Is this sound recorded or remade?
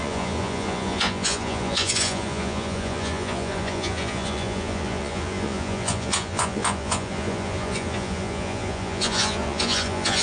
remade